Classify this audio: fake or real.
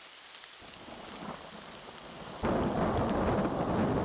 real